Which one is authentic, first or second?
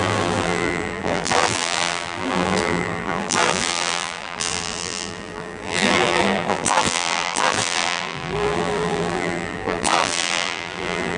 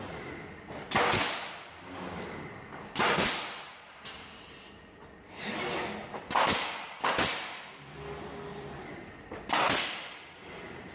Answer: second